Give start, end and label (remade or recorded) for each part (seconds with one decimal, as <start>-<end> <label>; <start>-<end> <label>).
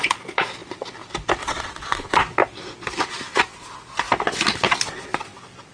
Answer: 0.0-1.4 recorded; 1.4-2.2 remade; 2.2-5.7 recorded